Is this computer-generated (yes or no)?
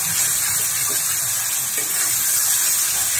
no